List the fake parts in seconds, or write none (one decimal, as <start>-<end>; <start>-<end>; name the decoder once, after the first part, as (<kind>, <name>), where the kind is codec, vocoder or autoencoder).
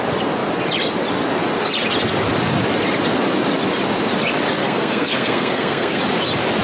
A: 4.6-6.0 (codec, SNAC)